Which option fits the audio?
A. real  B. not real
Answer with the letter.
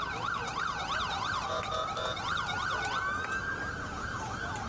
A